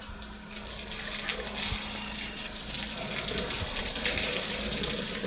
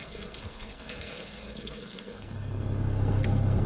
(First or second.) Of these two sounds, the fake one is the second